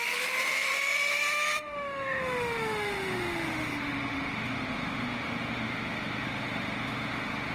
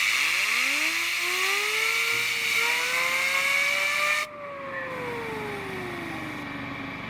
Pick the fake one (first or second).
first